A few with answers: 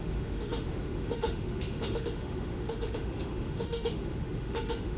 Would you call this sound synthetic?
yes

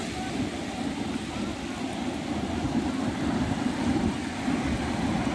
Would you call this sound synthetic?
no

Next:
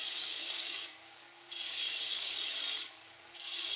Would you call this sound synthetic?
yes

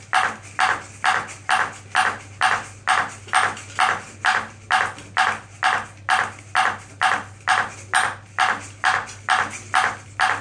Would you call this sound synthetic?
no